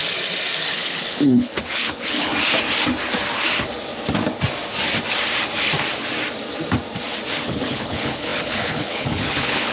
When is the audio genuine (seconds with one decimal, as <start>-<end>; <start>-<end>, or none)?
0.0-0.7; 2.3-7.4